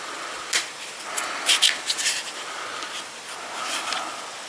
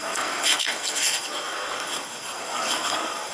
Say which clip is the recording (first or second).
first